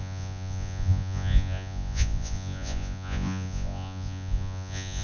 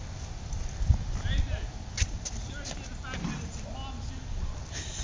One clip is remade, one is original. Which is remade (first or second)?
first